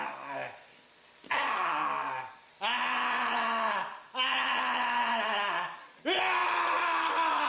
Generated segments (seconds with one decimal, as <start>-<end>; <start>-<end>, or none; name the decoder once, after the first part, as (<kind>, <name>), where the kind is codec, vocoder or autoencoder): none